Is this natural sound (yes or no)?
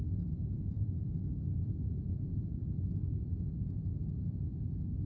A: yes